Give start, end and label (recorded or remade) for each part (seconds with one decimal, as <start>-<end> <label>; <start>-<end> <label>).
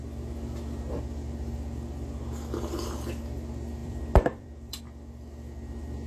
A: 0.0-3.8 recorded; 3.8-4.8 remade; 4.8-6.1 recorded